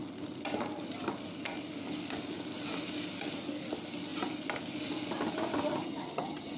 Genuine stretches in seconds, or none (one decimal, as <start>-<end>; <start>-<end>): 0.0-5.7